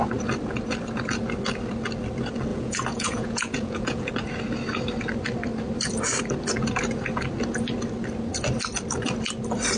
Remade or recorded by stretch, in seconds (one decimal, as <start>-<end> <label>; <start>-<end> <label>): 0.0-2.5 recorded; 2.5-4.1 remade; 4.1-9.8 recorded